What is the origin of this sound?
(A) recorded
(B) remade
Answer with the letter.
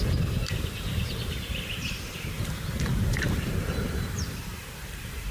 B